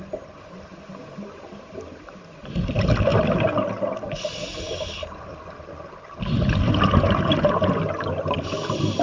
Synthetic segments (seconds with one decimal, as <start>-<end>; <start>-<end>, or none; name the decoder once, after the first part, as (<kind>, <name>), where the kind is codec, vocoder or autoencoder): 0.0-0.7 (vocoder, BigVGAN v2); 2.0-3.1; 8.3-9.0